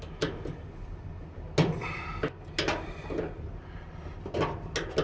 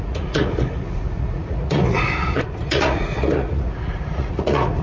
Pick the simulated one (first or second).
second